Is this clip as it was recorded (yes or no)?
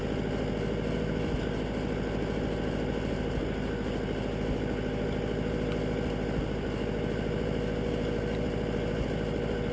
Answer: yes